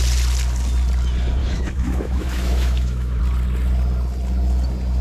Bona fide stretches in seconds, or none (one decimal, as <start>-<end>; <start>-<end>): 0.0-1.4; 3.2-5.0